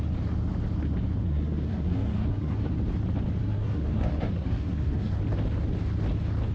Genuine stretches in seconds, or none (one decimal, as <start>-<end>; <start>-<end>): 0.0-1.2; 2.7-3.4; 5.1-6.5